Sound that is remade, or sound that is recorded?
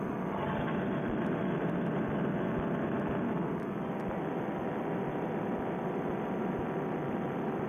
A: recorded